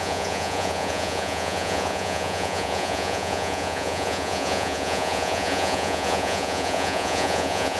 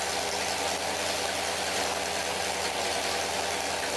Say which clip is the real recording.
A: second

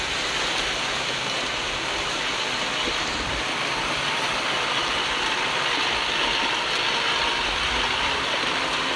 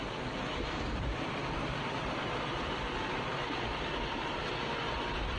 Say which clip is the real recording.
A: first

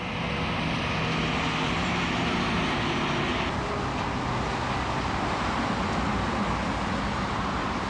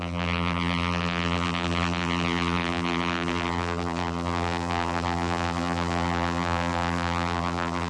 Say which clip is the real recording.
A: first